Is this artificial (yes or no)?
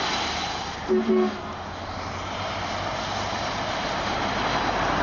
yes